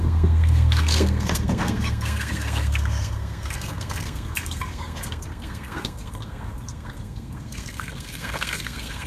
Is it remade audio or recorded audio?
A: remade